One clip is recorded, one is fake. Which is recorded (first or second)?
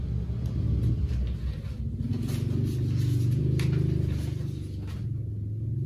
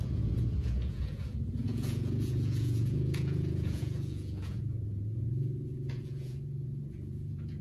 first